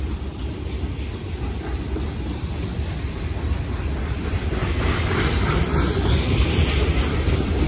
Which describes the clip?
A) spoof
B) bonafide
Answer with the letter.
A